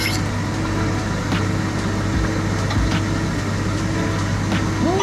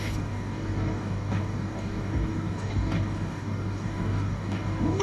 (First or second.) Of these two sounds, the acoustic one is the first